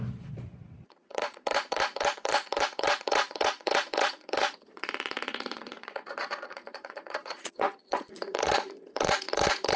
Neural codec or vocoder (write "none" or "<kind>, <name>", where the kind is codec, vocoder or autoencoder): vocoder, Vocos